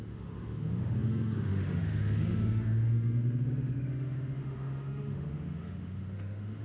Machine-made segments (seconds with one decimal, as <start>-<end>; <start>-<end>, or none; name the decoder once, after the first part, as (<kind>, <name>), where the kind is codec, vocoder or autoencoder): 0.0-6.6 (autoencoder, DAC-VAE)